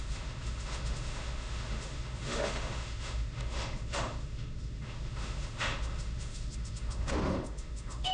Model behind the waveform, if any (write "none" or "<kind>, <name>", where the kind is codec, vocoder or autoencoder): autoencoder, DAC-VAE